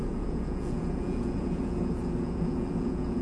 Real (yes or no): no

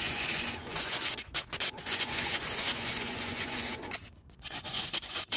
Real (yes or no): no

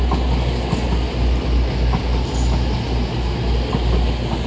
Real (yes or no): yes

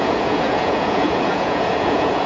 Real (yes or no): no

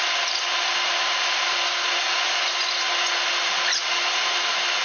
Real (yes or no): yes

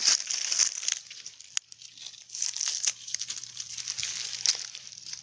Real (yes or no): yes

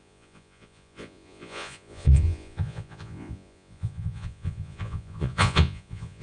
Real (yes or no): no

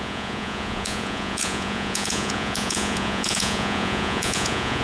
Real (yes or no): no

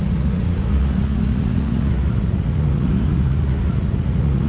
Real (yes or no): no